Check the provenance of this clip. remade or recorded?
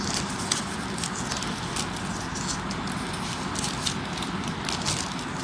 recorded